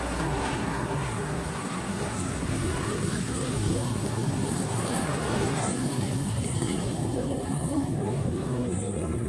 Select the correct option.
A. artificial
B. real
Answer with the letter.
A